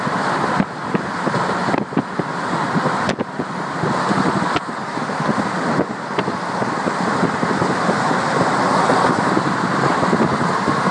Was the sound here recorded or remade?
remade